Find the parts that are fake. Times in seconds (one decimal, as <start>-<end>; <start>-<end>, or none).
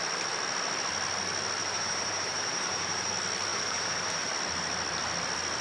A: 1.6-3.1; 3.5-4.3